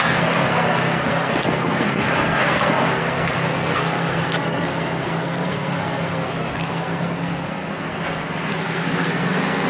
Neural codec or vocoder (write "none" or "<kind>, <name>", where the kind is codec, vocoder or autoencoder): codec, SNAC